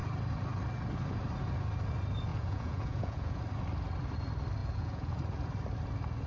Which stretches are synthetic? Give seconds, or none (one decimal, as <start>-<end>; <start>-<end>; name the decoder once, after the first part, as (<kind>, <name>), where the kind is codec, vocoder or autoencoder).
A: 2.3-3.4 (vocoder, Vocos); 4.6-5.2